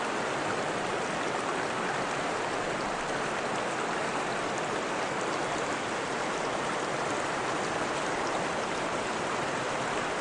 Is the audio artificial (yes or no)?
no